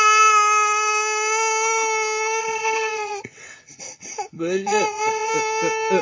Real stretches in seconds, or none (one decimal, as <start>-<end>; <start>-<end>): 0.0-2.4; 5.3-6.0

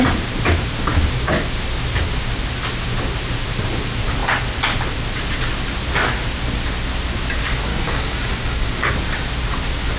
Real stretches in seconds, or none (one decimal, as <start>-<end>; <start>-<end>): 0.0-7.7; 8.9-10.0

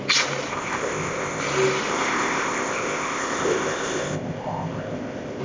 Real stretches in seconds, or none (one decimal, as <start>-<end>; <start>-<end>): 0.0-0.5; 1.4-1.9